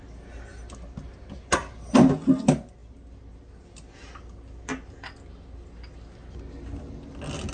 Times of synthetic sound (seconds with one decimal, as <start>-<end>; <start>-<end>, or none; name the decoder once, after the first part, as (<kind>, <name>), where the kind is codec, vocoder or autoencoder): none